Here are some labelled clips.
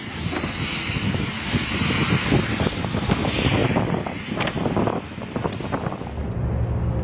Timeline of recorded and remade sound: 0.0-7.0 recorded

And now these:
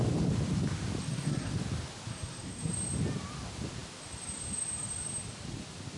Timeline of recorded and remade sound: 0.0-1.0 recorded; 1.0-1.5 remade; 1.5-2.1 recorded; 2.1-2.7 remade; 2.7-6.0 recorded

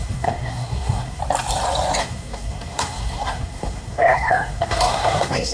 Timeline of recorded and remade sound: 0.0-1.2 remade; 1.2-2.0 recorded; 2.0-5.5 remade

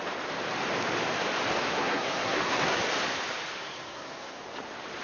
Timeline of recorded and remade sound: 0.0-1.6 recorded; 1.6-2.8 remade; 2.8-3.6 recorded; 3.6-4.4 remade; 4.4-5.0 recorded

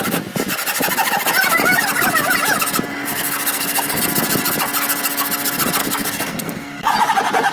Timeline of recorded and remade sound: 0.0-2.9 recorded; 2.9-4.0 remade; 4.0-5.8 recorded; 5.8-6.9 remade; 6.9-7.5 recorded

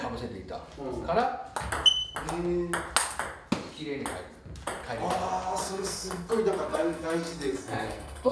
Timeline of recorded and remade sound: 0.0-5.6 recorded; 5.6-6.3 remade; 6.3-6.7 recorded; 6.7-8.3 remade

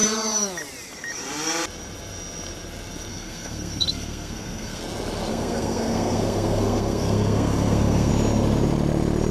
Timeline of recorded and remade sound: 0.0-3.1 recorded; 3.1-4.8 remade; 4.8-5.3 recorded; 5.3-8.1 remade; 8.1-9.3 recorded